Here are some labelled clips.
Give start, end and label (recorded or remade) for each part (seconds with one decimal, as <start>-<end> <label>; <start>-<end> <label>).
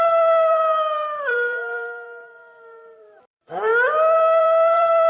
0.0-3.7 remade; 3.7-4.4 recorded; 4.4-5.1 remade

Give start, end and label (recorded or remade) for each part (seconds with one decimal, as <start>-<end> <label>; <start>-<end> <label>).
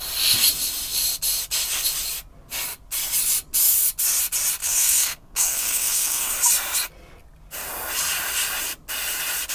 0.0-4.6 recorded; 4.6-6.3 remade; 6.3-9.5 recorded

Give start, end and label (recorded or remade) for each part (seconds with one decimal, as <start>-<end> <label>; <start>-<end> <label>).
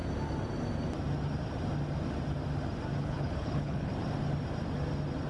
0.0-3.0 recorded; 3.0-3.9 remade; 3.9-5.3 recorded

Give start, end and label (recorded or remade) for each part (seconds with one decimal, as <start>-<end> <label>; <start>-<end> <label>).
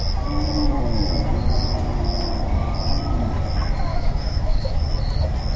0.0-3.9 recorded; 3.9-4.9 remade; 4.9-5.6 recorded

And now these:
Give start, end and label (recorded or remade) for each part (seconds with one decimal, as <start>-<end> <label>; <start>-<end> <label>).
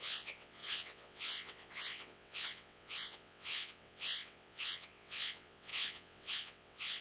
0.0-7.0 remade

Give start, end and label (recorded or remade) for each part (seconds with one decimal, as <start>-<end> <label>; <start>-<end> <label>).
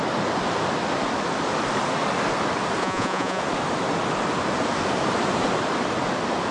0.0-2.8 recorded; 2.8-3.4 remade; 3.4-6.5 recorded